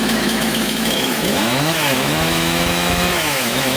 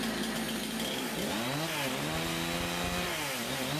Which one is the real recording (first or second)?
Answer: second